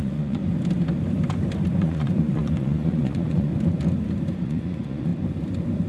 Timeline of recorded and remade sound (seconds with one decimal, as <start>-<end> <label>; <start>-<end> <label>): 0.0-0.4 remade; 0.4-1.8 recorded; 1.8-3.5 remade; 3.5-4.4 recorded; 4.4-5.1 remade; 5.1-5.9 recorded